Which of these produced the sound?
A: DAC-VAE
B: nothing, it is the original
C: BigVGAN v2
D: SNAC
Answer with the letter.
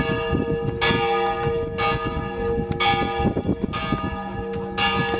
B